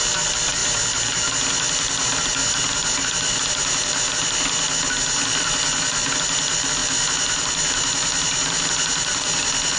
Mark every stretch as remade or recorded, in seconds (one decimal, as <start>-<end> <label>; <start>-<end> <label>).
0.0-9.8 recorded